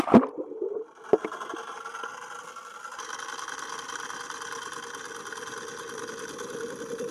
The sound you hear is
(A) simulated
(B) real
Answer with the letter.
B